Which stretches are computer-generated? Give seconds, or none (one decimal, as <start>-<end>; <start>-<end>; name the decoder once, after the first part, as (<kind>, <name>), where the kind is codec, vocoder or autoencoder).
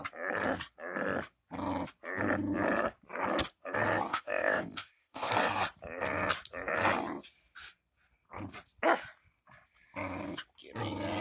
4.1-5.3 (codec, ZipCodec)